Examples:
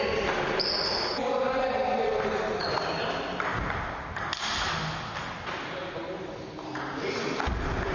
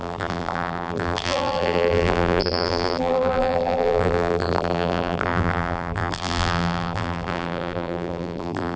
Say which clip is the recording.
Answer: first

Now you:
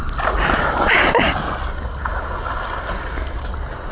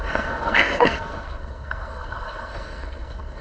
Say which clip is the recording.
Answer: first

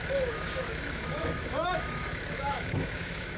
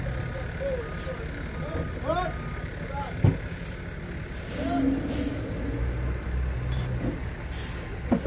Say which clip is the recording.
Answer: second